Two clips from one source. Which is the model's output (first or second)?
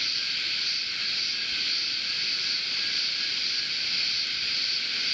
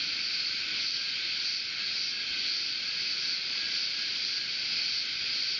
first